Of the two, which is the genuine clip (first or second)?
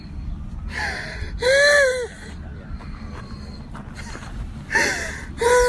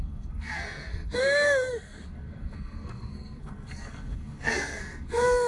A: first